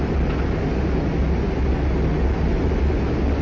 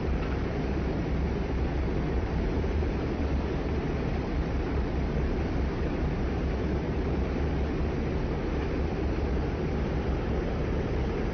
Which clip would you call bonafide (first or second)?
first